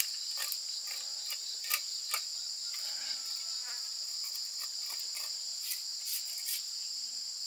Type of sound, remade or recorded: recorded